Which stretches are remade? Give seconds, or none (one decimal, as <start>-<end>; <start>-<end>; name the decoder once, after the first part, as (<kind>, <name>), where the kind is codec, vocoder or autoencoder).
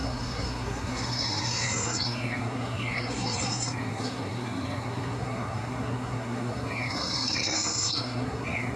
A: 0.0-8.8 (codec, SNAC)